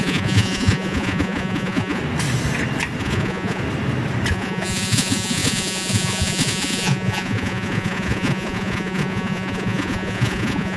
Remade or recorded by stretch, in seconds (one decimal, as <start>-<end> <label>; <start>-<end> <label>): 0.0-2.0 remade; 2.0-3.0 recorded; 3.0-3.6 remade; 3.6-4.3 recorded; 4.3-10.8 remade